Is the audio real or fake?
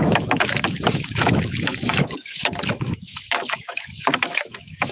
fake